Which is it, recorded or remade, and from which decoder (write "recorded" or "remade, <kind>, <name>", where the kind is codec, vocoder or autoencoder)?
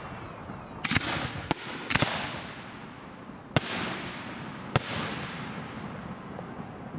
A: recorded